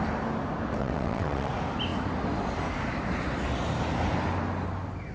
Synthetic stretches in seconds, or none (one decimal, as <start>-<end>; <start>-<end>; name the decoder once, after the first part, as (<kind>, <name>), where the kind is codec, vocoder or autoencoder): 0.8-1.5 (vocoder, WaveNeXt)